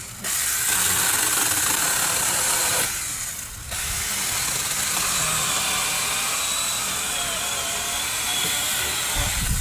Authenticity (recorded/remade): recorded